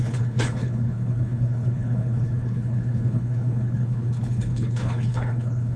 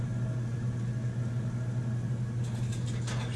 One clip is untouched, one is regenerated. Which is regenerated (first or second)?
first